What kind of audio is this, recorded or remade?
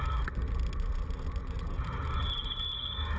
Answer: recorded